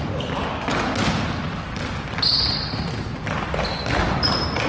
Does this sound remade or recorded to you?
recorded